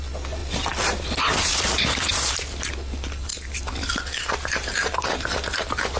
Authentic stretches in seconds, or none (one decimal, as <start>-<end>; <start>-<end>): 0.0-0.4; 2.7-3.3